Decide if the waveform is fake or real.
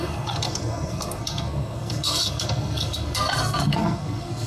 fake